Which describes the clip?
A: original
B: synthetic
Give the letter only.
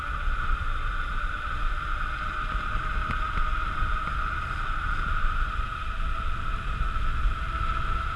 B